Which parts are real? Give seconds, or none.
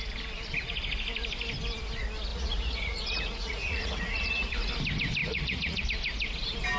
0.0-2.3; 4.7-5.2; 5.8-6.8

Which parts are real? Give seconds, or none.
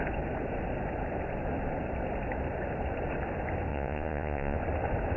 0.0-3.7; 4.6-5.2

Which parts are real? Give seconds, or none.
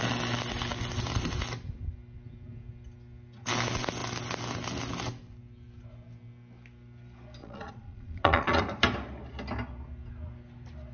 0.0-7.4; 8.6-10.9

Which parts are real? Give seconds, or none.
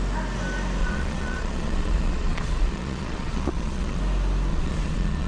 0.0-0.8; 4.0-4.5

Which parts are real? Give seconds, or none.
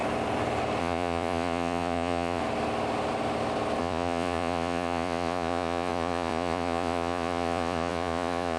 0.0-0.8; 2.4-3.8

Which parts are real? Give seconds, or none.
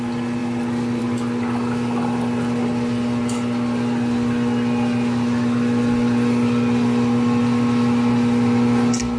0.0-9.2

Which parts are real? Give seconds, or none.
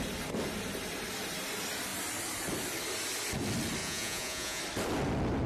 0.0-3.8; 4.6-5.5